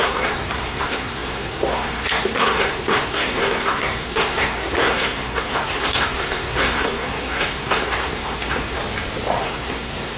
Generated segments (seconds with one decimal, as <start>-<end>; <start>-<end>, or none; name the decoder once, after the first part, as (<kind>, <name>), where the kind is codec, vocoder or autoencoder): 0.0-8.8 (codec, SNAC); 9.4-10.2